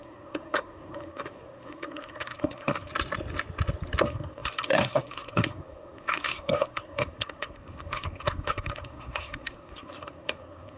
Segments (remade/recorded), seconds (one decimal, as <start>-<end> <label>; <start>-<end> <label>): 0.0-2.9 remade; 2.9-4.0 recorded; 4.0-10.8 remade